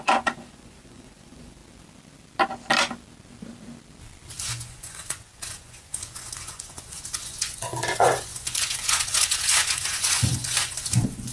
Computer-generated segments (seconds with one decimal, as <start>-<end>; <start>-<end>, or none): 0.0-1.6; 4.4-11.3